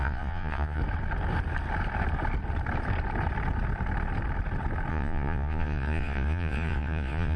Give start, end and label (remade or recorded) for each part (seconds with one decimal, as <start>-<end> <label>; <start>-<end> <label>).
0.0-0.8 remade; 0.8-4.9 recorded; 4.9-7.4 remade